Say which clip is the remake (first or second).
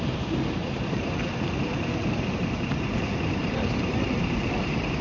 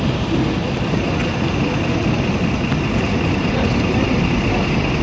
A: first